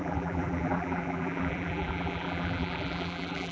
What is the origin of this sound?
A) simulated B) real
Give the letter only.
A